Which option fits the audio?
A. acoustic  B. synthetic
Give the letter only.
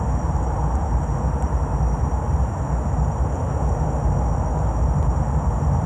A